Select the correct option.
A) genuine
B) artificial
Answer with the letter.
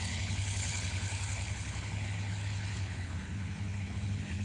B